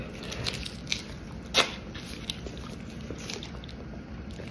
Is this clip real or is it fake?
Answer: real